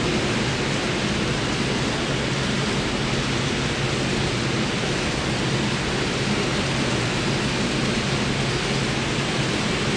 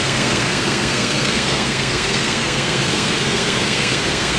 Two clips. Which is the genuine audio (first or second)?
first